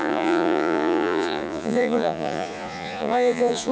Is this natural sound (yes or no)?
no